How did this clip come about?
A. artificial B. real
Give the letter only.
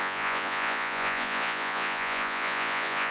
A